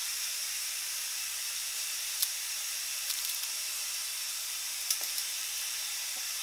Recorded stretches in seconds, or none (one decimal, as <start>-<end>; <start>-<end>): 3.8-4.3